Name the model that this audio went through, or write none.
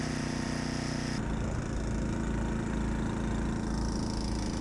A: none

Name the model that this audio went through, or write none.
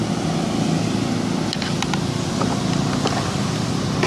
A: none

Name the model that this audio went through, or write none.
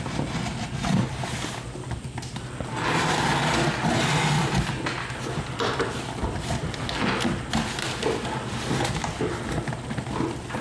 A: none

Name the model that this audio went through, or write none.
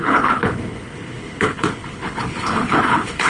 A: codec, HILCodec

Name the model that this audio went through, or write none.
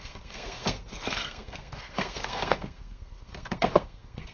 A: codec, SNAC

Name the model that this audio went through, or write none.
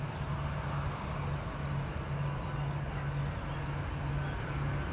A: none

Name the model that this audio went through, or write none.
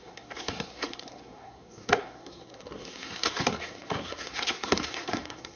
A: codec, SNAC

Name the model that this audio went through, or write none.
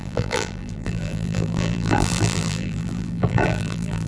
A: vocoder, BigVGAN v2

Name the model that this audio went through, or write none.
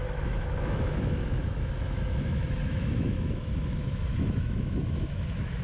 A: autoencoder, DAC-VAE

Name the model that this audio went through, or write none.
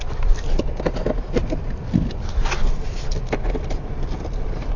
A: none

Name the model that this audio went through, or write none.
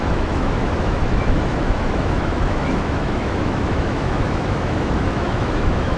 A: autoencoder, DAC-VAE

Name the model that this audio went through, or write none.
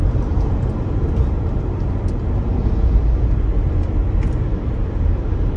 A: none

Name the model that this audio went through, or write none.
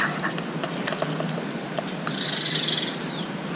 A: none